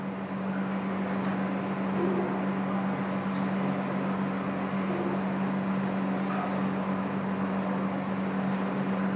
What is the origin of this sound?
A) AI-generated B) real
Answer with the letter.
B